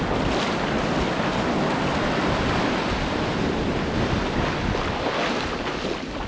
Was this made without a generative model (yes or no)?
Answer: yes